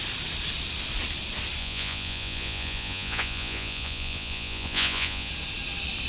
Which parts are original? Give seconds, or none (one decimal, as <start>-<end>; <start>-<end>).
0.0-1.6; 5.3-6.1